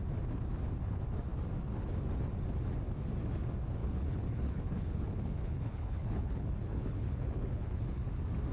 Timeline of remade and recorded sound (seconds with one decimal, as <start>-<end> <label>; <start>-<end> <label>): 0.0-3.8 recorded; 3.8-8.1 remade; 8.1-8.5 recorded